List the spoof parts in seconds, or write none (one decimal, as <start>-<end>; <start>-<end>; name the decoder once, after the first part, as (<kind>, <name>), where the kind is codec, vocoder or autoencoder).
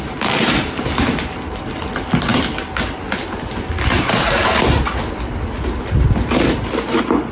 none